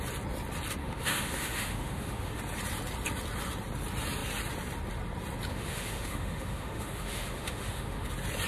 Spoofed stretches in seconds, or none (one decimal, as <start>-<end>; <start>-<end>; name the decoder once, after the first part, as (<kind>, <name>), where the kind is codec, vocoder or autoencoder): 0.8-2.4 (autoencoder, DAC-VAE); 5.5-8.1